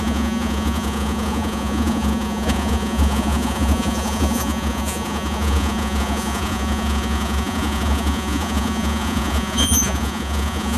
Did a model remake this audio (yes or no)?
yes